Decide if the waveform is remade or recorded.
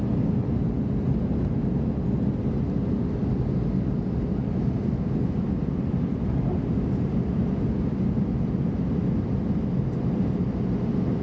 recorded